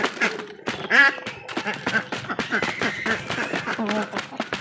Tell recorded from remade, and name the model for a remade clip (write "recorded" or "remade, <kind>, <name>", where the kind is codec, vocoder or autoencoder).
remade, vocoder, BigVGAN v2